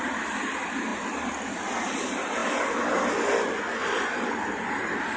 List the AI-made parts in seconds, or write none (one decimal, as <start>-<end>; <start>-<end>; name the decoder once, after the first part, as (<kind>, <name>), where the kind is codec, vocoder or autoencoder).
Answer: 0.9-2.0 (vocoder, BigVGAN v2); 2.4-3.1